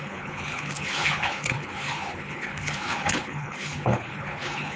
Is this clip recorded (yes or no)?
no